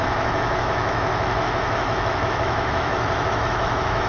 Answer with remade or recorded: remade